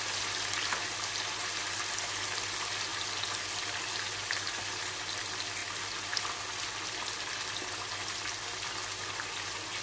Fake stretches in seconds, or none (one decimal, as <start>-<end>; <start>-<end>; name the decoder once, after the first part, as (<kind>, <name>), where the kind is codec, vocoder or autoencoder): none